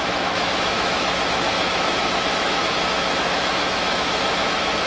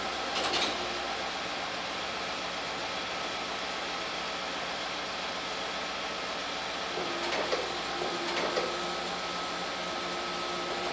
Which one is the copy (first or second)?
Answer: first